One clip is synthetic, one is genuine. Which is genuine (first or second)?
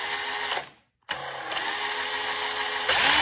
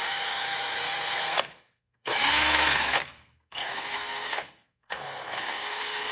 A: first